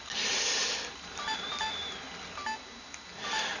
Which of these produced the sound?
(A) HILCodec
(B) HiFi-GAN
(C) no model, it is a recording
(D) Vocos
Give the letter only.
C